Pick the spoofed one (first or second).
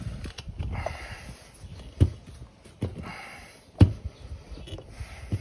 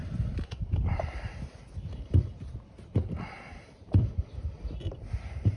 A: second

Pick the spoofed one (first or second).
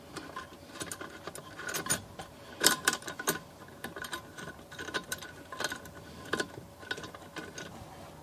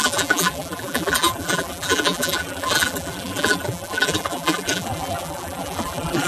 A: second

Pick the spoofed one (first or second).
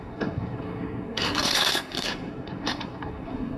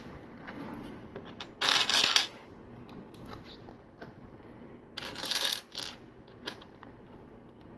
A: first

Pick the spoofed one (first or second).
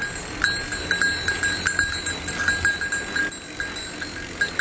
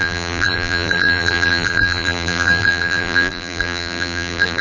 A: second